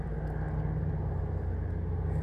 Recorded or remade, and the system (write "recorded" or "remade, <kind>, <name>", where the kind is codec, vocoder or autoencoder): recorded